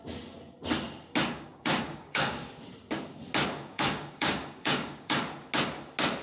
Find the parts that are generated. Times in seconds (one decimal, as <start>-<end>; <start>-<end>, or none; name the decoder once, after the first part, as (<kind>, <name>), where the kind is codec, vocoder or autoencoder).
1.3-2.5 (codec, DAC); 3.6-5.2